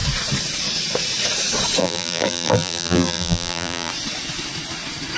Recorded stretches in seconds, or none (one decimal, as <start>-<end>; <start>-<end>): 0.0-1.8; 3.9-5.2